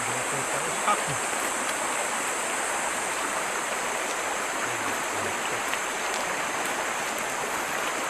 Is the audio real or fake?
real